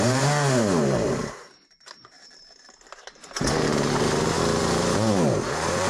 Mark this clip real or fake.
fake